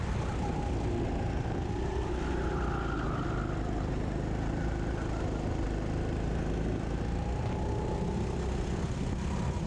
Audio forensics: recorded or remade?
recorded